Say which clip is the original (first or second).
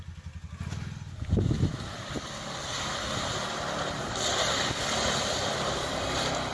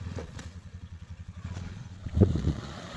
first